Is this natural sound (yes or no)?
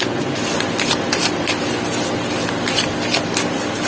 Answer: yes